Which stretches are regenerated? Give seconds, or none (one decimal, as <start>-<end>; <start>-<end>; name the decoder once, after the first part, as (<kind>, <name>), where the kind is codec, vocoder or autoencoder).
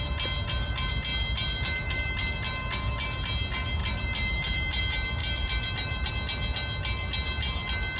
3.8-4.8 (vocoder, BigVGAN v2); 5.2-6.1